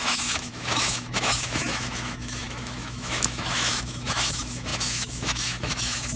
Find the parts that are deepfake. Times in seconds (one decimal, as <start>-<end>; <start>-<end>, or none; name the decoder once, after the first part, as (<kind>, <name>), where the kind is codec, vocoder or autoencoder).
0.0-6.2 (autoencoder, DAC-VAE)